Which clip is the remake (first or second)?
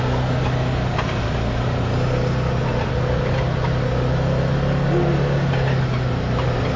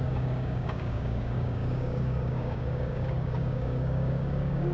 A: second